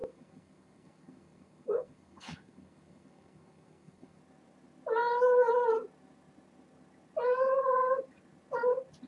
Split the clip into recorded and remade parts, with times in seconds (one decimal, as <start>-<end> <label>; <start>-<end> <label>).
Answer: 0.0-4.2 remade; 4.2-9.1 recorded